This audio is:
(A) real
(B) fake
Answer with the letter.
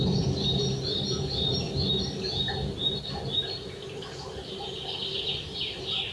A